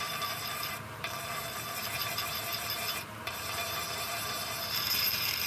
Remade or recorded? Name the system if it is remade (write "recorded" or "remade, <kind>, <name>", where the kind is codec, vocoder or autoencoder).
remade, vocoder, BigVGAN v2